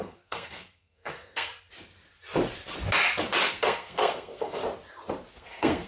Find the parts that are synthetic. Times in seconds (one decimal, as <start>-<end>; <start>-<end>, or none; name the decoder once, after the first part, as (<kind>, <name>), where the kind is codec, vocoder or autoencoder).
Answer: 0.0-1.5 (codec, SNAC); 3.5-4.6; 5.3-5.9